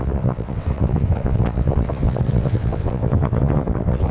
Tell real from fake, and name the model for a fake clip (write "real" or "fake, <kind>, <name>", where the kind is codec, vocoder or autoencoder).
fake, vocoder, WaveNeXt